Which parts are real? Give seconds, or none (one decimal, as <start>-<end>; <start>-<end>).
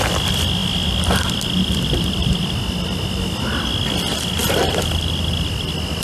0.0-6.0